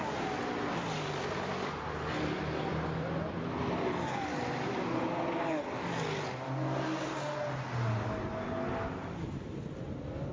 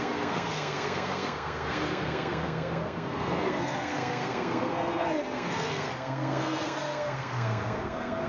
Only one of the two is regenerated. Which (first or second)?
second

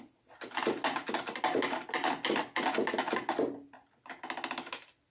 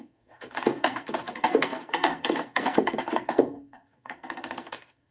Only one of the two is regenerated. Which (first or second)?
second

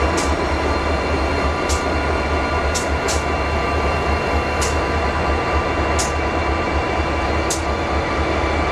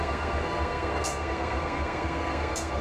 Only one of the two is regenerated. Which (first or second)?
second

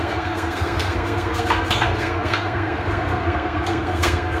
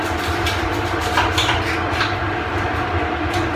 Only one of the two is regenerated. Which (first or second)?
first